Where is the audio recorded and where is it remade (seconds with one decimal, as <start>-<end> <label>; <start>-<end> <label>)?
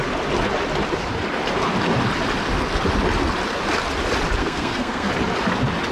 0.0-4.4 recorded; 4.4-5.1 remade; 5.1-5.9 recorded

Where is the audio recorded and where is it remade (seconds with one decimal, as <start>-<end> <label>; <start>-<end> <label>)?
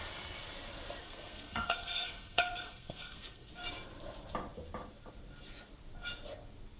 0.0-1.0 recorded; 1.0-3.5 remade; 3.5-6.8 recorded